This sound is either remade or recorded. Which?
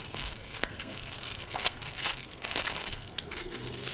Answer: remade